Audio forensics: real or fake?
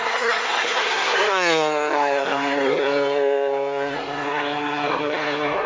fake